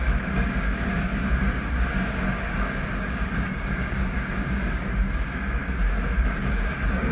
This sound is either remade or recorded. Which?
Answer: remade